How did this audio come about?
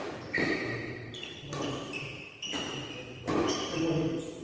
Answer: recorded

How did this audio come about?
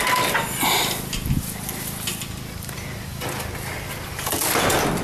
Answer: recorded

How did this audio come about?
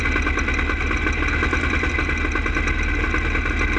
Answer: recorded